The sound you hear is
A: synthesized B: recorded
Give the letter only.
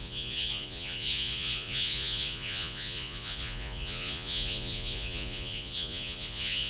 A